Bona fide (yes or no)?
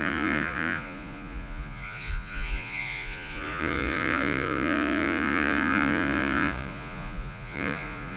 no